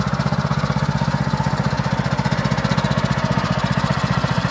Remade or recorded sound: recorded